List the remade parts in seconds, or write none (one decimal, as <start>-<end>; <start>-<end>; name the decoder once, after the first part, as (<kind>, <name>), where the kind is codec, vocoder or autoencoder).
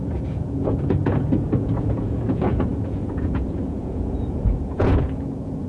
0.0-5.7 (vocoder, Vocos)